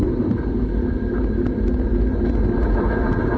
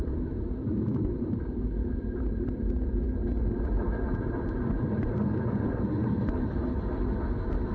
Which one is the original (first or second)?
first